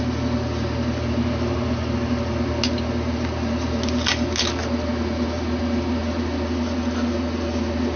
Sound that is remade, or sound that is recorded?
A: recorded